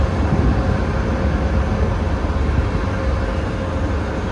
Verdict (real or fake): real